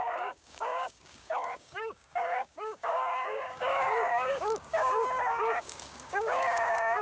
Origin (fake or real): fake